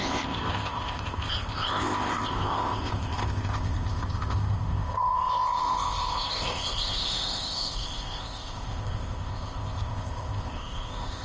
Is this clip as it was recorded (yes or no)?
no